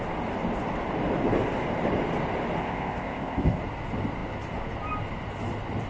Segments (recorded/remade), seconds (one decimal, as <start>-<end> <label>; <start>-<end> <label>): 0.0-2.6 recorded; 2.6-3.6 remade; 3.6-5.9 recorded